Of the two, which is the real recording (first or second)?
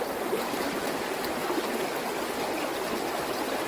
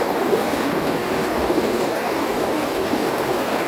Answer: first